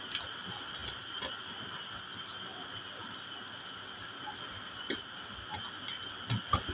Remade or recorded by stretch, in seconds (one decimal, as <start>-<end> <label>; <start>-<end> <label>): 0.0-6.7 recorded